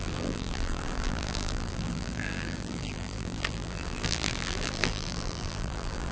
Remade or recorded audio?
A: remade